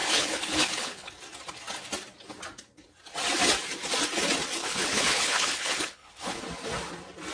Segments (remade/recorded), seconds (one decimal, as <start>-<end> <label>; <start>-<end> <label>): 0.0-1.1 remade; 1.1-4.6 recorded; 4.6-6.4 remade; 6.4-7.3 recorded